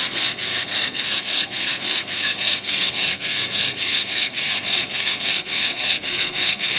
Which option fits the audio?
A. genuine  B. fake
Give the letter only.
B